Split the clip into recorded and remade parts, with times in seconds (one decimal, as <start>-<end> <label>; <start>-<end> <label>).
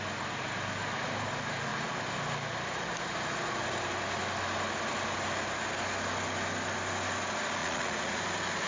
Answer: 0.0-7.6 recorded; 7.6-8.2 remade; 8.2-8.7 recorded